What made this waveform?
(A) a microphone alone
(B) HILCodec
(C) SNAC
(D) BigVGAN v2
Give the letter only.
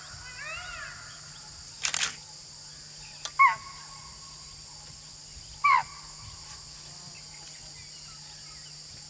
A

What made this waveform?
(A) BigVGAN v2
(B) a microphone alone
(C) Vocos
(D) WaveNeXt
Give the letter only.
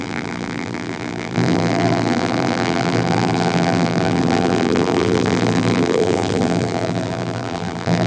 A